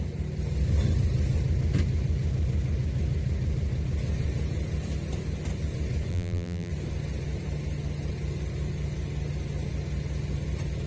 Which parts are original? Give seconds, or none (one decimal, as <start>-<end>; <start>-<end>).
0.0-6.1; 6.7-10.9

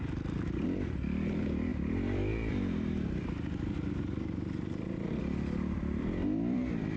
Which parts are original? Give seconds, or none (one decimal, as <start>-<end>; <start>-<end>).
none

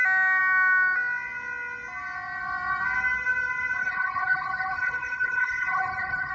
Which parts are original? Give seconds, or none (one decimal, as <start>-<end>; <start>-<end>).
0.0-3.8

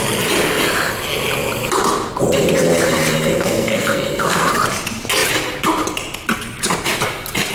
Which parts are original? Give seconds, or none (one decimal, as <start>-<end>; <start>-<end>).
0.0-3.3; 4.5-7.5

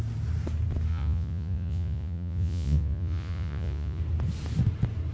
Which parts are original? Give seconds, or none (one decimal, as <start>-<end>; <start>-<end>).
0.0-0.9; 4.0-5.1

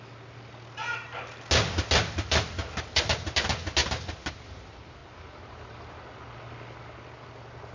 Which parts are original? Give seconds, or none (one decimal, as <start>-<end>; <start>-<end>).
0.0-7.7

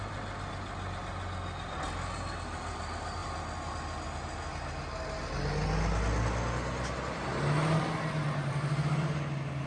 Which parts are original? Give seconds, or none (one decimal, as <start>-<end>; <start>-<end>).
0.0-9.7